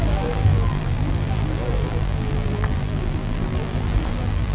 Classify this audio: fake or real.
fake